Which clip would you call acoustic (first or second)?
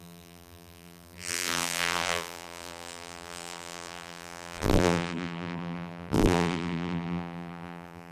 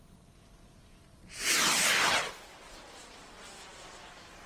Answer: second